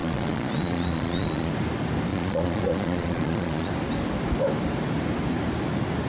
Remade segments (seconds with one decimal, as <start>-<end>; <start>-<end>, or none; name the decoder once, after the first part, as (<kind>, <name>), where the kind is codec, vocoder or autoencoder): 0.0-1.5 (vocoder, Vocos); 2.1-3.7